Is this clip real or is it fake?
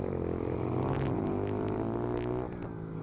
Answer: real